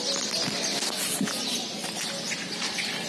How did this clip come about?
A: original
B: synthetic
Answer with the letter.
A